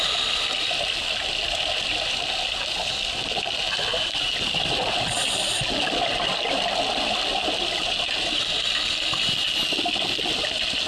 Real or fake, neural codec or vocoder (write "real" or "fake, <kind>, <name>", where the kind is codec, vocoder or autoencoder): real